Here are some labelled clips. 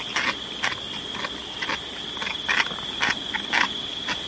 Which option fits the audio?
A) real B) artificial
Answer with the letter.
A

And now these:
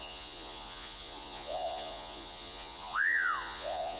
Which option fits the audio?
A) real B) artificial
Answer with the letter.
B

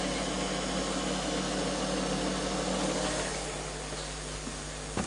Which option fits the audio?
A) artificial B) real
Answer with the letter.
B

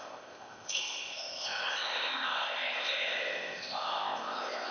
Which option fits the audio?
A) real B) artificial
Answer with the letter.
B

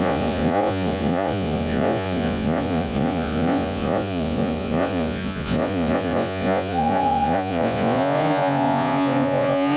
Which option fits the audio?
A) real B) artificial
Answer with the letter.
B